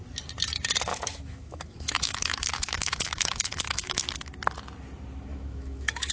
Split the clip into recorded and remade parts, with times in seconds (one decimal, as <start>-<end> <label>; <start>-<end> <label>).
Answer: 0.0-0.9 recorded; 0.9-4.1 remade; 4.1-5.3 recorded; 5.3-6.1 remade